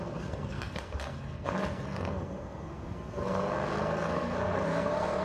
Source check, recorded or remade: remade